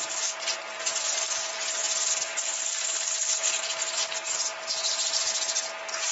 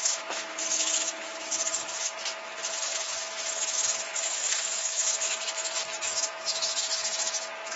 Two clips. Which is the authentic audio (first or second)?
first